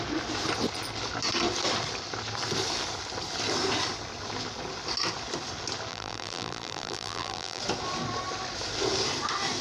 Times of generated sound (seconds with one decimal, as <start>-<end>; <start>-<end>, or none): 5.9-7.6